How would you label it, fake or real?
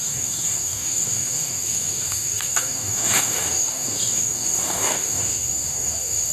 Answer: fake